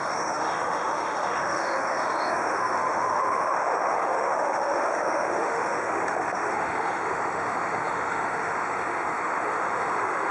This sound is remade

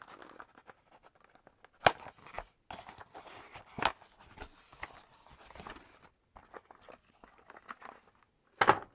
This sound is recorded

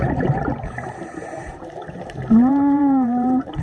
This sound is remade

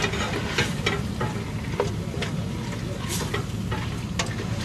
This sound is recorded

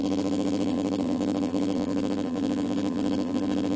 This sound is remade